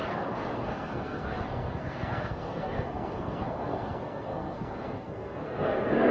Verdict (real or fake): fake